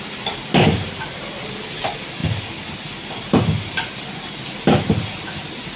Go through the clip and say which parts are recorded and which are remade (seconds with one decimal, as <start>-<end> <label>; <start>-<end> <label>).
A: 0.0-5.8 recorded